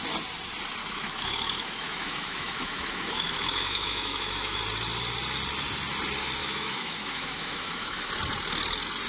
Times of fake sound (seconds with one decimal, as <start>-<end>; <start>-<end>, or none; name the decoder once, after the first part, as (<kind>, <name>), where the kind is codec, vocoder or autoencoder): 0.8-4.6 (autoencoder, DAC-VAE); 6.4-8.1